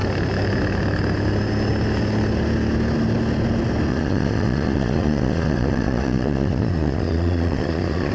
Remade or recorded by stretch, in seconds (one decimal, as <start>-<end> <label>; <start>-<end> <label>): 0.0-3.9 recorded; 3.9-8.1 remade